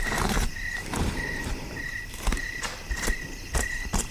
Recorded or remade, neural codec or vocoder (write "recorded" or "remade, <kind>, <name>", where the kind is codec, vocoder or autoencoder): remade, vocoder, BigVGAN v2